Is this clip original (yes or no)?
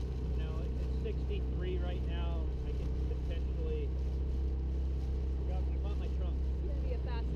yes